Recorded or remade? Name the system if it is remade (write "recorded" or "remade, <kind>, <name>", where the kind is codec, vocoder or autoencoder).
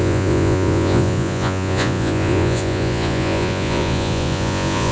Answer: remade, vocoder, Vocos